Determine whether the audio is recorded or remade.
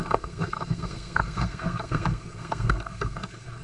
remade